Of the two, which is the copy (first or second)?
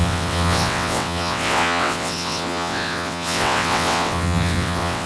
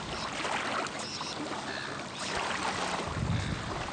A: first